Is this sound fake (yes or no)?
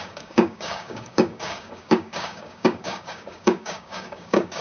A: yes